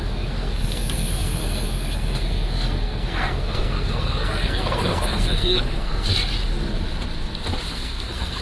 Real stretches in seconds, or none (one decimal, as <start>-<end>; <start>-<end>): 6.1-7.7